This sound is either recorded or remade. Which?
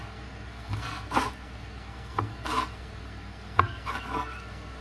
remade